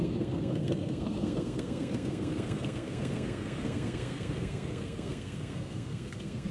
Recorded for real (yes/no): no